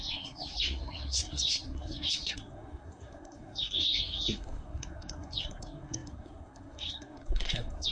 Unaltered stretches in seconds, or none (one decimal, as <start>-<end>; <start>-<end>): none